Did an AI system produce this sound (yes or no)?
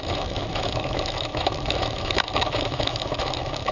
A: yes